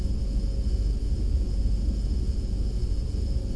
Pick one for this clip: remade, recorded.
recorded